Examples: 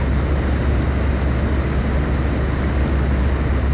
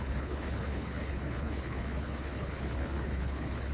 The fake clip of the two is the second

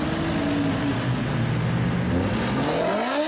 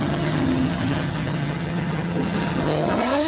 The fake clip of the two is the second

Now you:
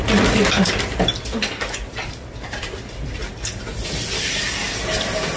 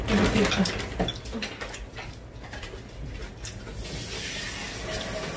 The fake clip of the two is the first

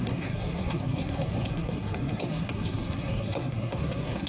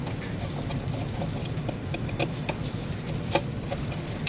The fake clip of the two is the first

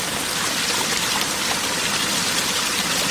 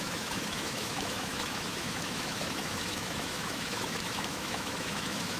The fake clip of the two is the second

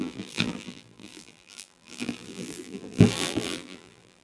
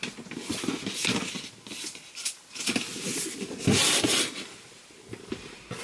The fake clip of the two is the first